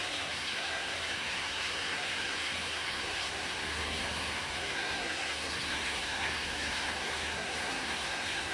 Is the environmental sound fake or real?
fake